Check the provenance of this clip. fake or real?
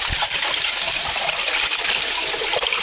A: real